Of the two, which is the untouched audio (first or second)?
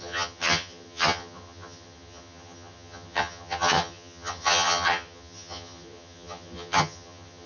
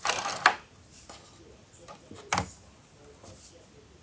second